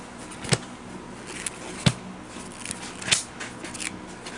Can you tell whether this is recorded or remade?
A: recorded